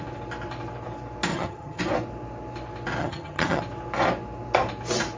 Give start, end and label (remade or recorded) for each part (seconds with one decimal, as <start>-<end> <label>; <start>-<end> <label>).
0.0-1.3 recorded; 1.3-1.8 remade; 1.8-3.0 recorded; 3.0-3.6 remade; 3.6-5.2 recorded